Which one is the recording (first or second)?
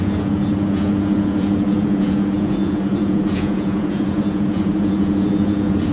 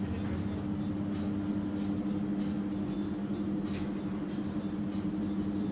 second